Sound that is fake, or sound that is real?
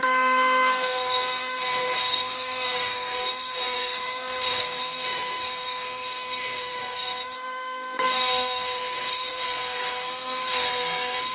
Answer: fake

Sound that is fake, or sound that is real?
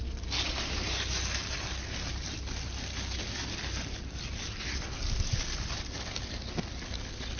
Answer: real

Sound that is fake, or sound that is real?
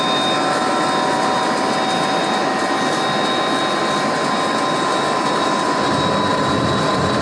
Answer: real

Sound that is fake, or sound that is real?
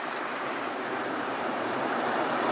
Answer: fake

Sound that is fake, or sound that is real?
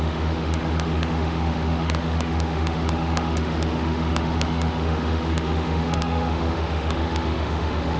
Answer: fake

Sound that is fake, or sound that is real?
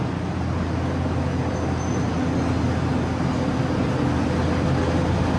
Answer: real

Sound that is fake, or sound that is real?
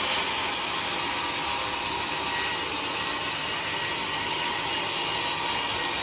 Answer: real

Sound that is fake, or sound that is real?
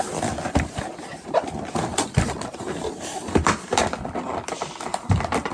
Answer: fake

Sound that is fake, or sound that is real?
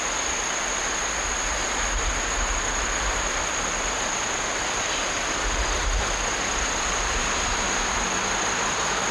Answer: real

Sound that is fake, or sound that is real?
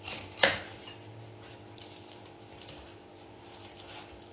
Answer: fake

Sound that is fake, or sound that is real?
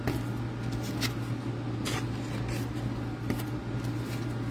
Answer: real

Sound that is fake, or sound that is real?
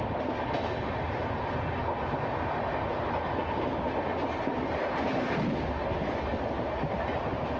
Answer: real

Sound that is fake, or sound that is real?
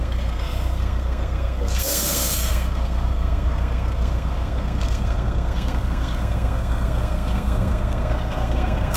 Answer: fake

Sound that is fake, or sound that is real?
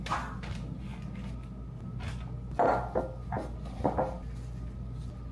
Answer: real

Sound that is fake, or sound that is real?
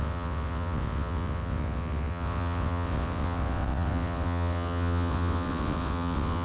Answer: fake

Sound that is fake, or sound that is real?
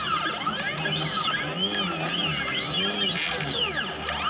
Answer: real